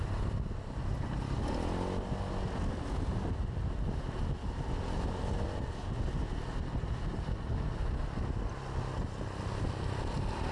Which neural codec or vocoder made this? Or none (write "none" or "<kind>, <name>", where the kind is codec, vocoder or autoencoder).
none